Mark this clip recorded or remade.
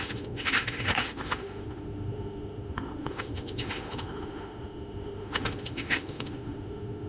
remade